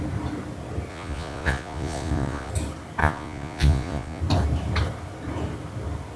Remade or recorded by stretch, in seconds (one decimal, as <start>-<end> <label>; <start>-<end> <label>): 0.0-0.9 recorded; 0.9-2.5 remade; 2.5-3.0 recorded; 3.0-4.2 remade; 4.2-6.2 recorded